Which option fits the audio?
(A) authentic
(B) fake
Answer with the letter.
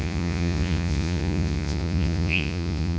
B